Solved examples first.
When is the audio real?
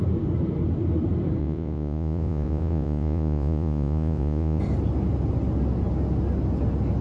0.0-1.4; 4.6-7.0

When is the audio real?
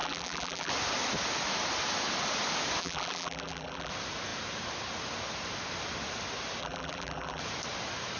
0.7-2.8; 3.9-6.6; 7.4-8.2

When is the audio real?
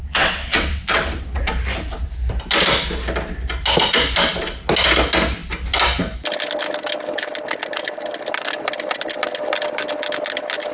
1.4-10.7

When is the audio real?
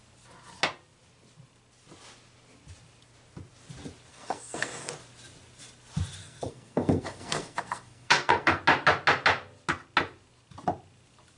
0.0-4.1; 4.9-6.2; 8.6-11.4